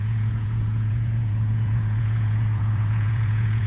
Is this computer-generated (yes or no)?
yes